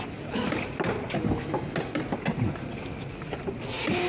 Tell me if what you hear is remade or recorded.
recorded